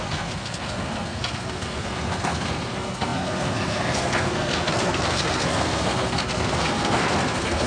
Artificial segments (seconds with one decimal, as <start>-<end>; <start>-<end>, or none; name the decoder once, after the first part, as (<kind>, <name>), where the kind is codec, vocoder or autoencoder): 0.0-7.7 (codec, SNAC)